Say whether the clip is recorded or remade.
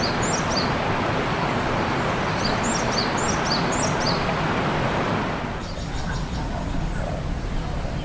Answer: recorded